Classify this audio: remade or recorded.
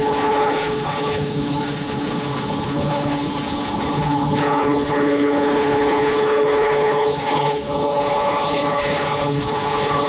remade